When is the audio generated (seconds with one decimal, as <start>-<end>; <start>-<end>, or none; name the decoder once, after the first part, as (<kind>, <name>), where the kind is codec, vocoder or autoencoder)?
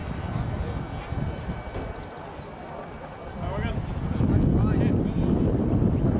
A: none